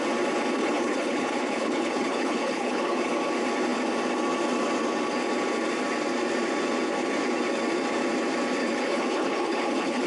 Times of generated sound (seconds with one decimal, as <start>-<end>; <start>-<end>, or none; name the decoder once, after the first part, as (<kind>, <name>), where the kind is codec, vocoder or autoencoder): 0.6-3.1 (codec, HILCodec); 8.6-10.1